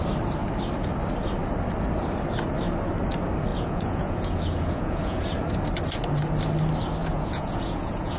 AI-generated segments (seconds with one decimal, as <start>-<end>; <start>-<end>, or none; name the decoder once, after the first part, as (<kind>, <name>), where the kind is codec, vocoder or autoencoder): 3.5-5.3 (vocoder, Vocos); 7.0-8.2